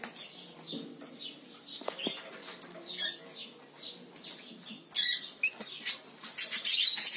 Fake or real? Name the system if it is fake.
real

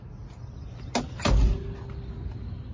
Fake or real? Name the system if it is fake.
real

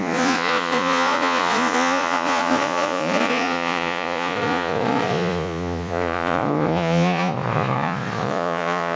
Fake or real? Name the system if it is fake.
fake, vocoder, Vocos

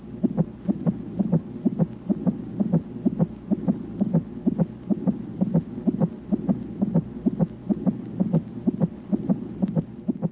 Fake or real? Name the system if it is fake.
real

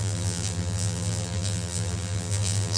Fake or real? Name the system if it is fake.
fake, vocoder, BigVGAN v2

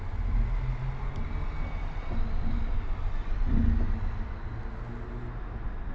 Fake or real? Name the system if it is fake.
real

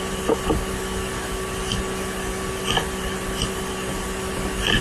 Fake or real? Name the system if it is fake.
real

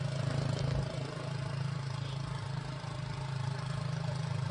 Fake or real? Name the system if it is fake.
real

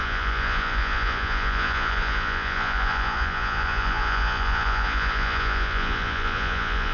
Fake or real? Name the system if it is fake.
fake, vocoder, Vocos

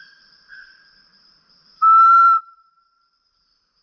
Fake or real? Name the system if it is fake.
fake, vocoder, BigVGAN v2